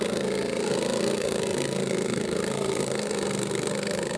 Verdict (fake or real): fake